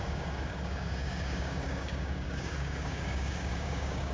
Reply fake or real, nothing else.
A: fake